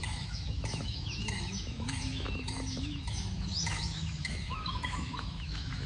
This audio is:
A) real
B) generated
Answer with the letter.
B